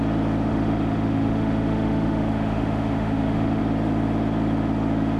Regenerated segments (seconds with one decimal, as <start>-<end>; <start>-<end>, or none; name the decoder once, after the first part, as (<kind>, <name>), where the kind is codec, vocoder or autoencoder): 0.5-3.6 (autoencoder, DAC-VAE)